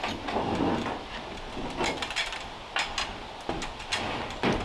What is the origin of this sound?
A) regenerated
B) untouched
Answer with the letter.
B